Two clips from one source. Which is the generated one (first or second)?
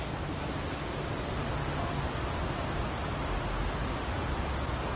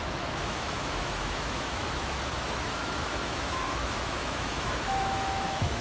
second